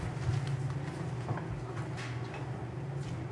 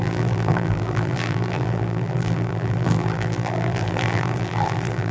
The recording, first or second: first